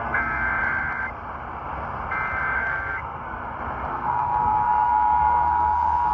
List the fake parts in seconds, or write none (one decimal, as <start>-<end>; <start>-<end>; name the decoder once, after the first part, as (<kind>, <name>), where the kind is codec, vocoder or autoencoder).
0.0-0.5 (codec, SNAC); 2.6-3.4; 3.9-6.1